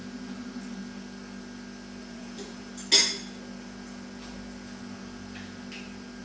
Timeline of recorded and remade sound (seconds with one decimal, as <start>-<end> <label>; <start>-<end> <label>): 0.0-2.0 recorded; 2.0-2.7 remade; 2.7-6.2 recorded